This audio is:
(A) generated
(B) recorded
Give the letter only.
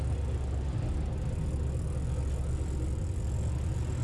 B